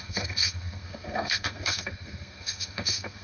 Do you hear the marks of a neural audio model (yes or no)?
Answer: yes